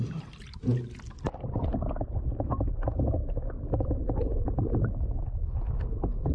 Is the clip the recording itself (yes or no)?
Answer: yes